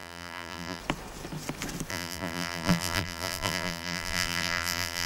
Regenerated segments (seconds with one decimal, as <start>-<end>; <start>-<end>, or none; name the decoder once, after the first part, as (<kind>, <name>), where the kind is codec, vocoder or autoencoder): 0.0-0.8 (vocoder, BigVGAN v2); 1.9-5.1

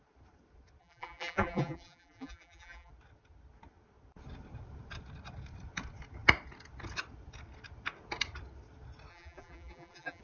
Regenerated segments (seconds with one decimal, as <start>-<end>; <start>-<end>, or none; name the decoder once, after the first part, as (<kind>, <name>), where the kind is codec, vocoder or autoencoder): 0.8-2.9 (vocoder, BigVGAN v2); 9.1-10.2

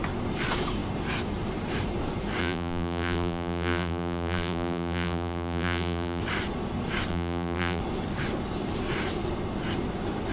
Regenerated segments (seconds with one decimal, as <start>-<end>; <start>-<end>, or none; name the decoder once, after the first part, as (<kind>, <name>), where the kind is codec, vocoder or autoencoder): 2.4-6.2 (vocoder, BigVGAN v2); 7.1-7.8

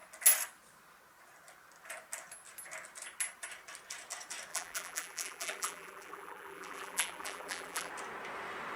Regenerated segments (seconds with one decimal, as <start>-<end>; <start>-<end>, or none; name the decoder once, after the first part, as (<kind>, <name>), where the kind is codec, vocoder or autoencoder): 4.5-7.9 (vocoder, BigVGAN v2)